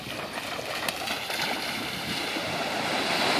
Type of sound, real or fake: real